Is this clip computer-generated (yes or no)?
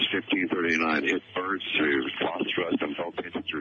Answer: no